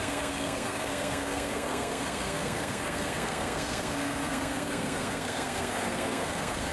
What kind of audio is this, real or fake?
fake